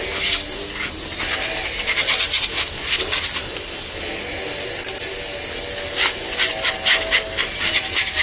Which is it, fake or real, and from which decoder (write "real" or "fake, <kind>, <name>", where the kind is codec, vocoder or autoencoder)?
real